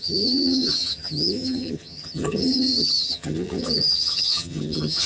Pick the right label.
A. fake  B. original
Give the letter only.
A